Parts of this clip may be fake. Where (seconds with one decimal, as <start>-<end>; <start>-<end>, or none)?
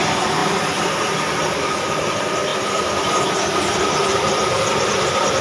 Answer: 0.4-1.0